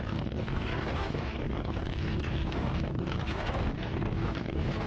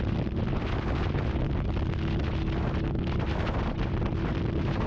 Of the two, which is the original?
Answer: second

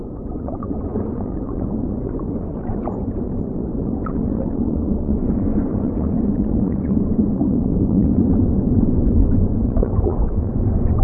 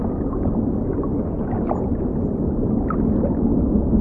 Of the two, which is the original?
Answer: second